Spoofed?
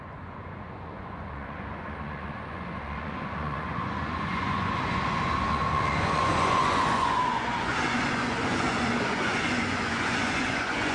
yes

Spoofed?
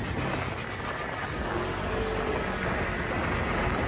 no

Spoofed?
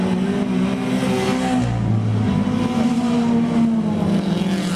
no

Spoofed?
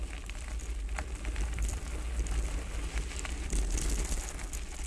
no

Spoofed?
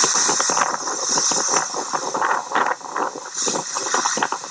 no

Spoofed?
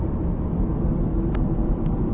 no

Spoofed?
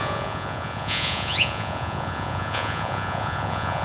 yes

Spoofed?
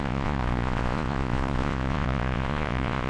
yes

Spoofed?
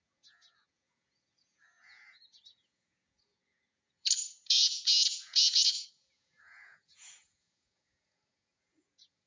yes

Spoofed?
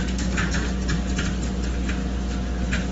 no